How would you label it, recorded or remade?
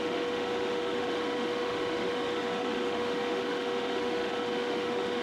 remade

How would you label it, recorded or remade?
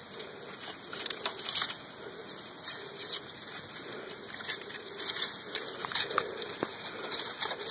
remade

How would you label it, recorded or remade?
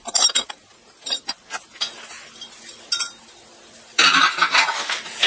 recorded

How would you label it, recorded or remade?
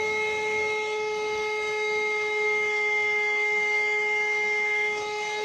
remade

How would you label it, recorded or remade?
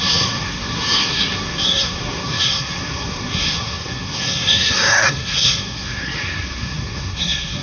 remade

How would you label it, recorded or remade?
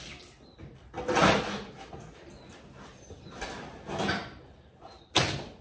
recorded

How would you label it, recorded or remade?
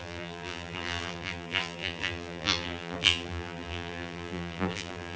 remade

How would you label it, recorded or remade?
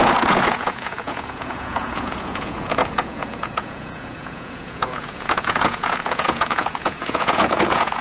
remade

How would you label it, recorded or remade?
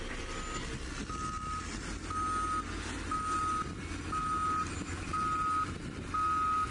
recorded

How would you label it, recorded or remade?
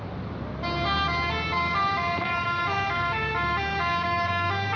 recorded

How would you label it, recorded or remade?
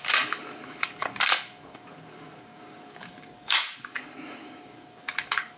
remade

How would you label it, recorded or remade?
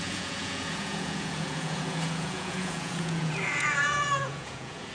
remade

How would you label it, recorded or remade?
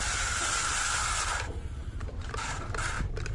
remade